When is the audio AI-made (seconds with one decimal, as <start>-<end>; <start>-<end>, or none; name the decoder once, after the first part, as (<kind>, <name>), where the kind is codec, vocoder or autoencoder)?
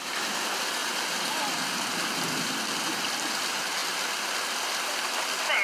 none